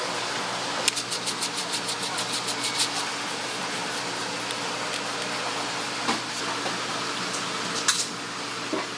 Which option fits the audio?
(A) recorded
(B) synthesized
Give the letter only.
A